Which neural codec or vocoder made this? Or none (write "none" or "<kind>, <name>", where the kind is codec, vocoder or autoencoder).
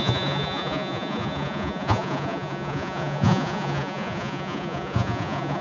vocoder, Vocos